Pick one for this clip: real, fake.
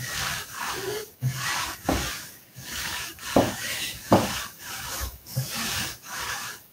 fake